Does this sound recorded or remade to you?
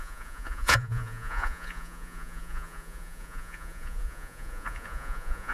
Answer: remade